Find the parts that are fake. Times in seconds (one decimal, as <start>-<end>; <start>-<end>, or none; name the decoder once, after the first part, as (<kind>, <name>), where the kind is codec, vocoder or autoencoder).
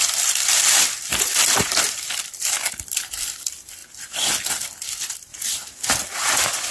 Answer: 0.0-3.8 (vocoder, BigVGAN v2); 4.4-5.3; 5.9-6.7